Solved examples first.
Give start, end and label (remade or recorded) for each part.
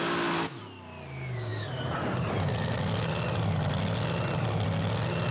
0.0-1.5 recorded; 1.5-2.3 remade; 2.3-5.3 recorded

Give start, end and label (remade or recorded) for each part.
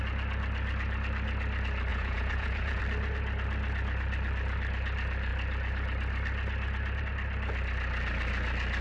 0.0-1.9 recorded; 1.9-2.8 remade; 2.8-8.8 recorded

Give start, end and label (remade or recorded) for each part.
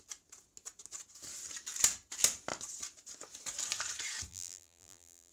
0.0-4.3 recorded; 4.3-5.3 remade